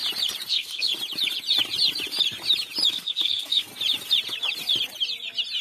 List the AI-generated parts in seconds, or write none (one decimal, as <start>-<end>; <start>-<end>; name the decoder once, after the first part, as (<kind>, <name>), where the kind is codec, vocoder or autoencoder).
0.5-0.9 (codec, SNAC); 2.9-3.7